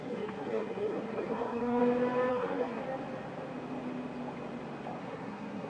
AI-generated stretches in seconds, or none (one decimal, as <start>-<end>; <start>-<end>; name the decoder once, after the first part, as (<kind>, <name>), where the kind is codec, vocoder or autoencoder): 0.0-1.8 (codec, SNAC); 2.3-2.8; 5.0-5.7